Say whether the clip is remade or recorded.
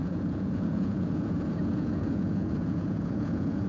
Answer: remade